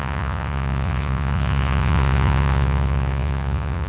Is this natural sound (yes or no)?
no